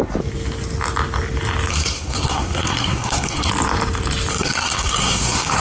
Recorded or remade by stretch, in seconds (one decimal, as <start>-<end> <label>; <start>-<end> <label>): 0.0-1.7 recorded; 1.7-3.5 remade; 3.5-4.3 recorded; 4.3-5.6 remade

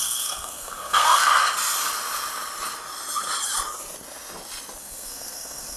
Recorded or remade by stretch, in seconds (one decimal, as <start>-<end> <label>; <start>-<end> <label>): 0.0-1.3 remade; 1.3-4.8 recorded; 4.8-5.8 remade